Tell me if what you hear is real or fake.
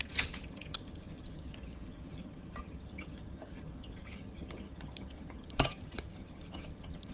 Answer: fake